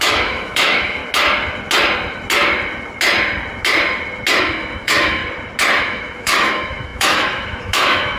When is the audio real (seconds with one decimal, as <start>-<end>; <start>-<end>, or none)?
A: 1.0-4.4; 5.2-5.8